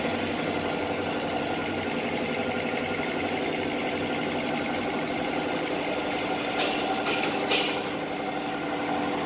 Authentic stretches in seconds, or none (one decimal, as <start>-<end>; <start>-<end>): 0.0-9.3

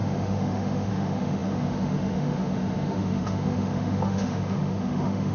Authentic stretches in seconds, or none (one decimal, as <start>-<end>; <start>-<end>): none

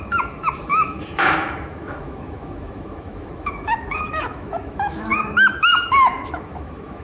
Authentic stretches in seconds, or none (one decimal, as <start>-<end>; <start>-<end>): none

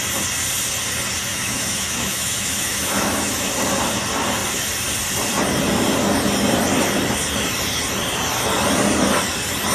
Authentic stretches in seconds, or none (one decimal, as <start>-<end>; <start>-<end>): 0.0-1.3; 3.5-9.7

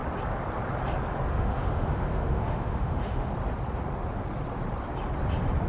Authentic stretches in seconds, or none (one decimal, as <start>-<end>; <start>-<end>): 0.0-1.3; 3.3-5.7

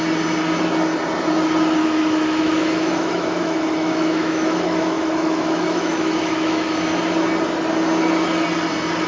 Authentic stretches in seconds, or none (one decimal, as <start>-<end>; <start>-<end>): 0.0-1.8; 7.0-9.1

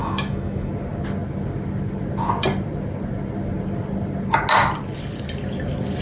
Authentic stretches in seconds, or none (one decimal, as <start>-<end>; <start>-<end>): 0.7-6.0